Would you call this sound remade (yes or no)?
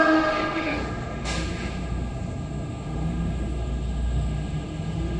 yes